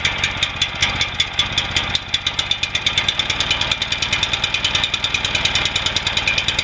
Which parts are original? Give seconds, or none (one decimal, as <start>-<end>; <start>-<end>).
0.0-6.6